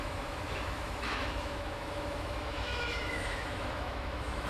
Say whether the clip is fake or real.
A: fake